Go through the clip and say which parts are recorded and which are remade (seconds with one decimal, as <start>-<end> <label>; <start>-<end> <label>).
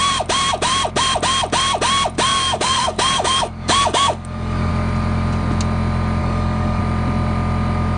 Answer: 0.0-2.3 recorded; 2.3-4.7 remade; 4.7-6.2 recorded; 6.2-6.8 remade; 6.8-8.0 recorded